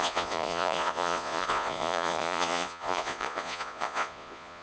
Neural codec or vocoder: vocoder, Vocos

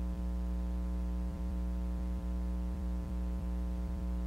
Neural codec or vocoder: vocoder, BigVGAN v2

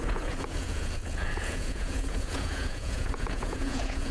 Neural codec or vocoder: vocoder, Vocos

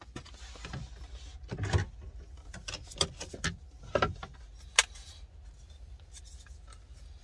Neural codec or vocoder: none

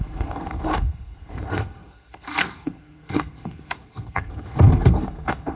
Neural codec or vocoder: codec, SNAC